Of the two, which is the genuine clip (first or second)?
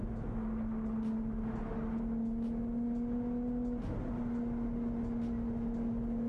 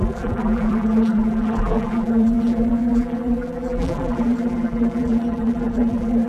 first